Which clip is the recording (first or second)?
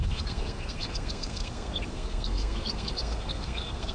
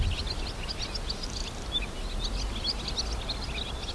second